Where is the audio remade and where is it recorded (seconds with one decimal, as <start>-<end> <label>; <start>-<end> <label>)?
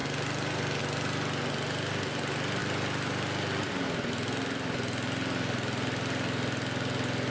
0.0-7.3 recorded